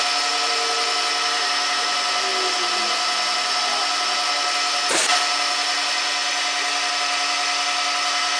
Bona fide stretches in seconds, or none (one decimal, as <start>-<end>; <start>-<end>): 0.0-8.4